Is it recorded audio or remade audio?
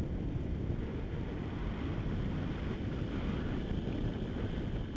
recorded